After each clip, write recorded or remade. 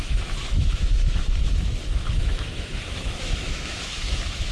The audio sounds remade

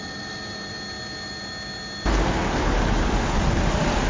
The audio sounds recorded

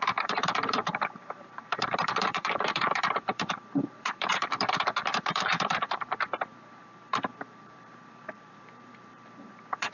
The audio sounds remade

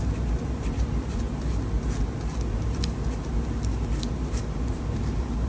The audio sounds recorded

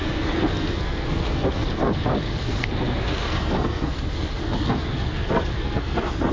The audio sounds remade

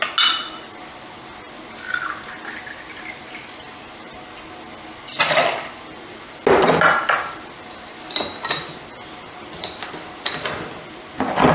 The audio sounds recorded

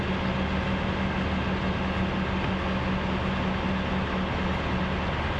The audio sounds recorded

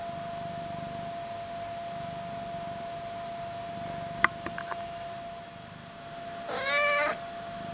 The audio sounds recorded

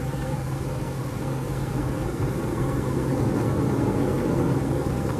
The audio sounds remade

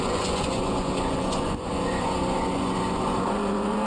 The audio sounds remade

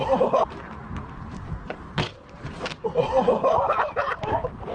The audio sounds remade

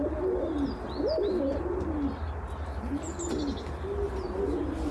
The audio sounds recorded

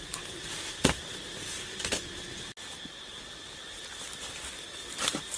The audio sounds recorded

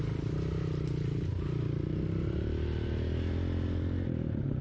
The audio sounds recorded